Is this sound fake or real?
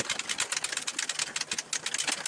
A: real